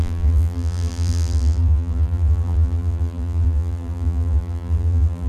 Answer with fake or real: fake